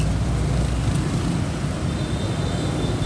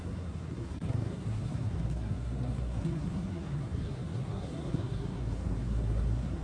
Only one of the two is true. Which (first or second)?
first